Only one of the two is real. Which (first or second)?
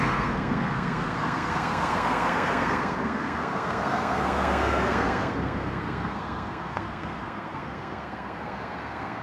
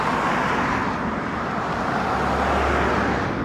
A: second